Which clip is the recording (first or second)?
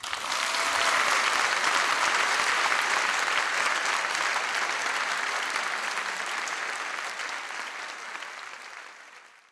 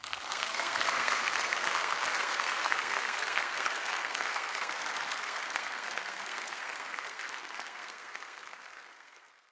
first